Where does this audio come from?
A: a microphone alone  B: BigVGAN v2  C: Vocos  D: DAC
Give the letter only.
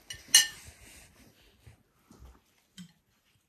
A